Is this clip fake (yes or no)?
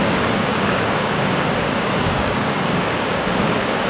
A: yes